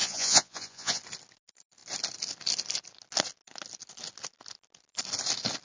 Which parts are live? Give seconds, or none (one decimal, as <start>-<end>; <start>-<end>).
1.0-5.6